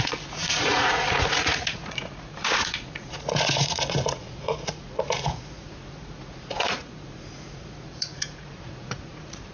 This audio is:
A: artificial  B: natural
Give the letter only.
A